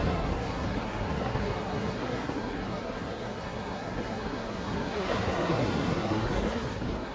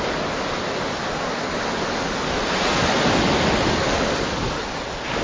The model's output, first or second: first